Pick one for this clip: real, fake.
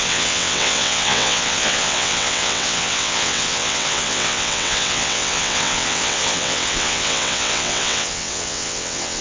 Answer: fake